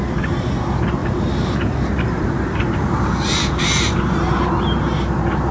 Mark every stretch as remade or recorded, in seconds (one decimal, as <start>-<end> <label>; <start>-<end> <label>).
0.0-1.0 recorded; 1.0-4.0 remade; 4.0-5.5 recorded